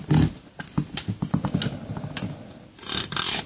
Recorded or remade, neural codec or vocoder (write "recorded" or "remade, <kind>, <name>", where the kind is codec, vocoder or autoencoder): recorded